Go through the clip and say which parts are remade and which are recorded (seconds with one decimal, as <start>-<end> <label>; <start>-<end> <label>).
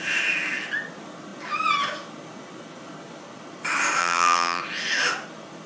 0.0-4.0 recorded; 4.0-4.6 remade; 4.6-5.7 recorded